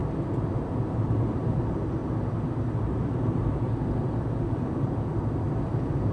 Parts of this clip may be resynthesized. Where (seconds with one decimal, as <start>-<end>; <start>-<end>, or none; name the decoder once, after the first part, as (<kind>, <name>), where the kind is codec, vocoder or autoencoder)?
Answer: 0.0-1.6 (vocoder, BigVGAN v2); 2.0-5.6